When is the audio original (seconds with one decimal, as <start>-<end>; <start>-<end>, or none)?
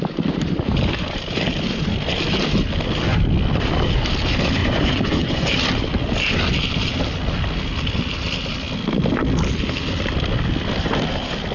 0.0-4.6; 5.5-11.5